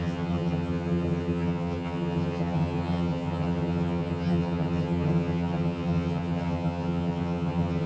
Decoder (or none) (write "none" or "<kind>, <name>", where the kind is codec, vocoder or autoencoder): vocoder, HiFi-GAN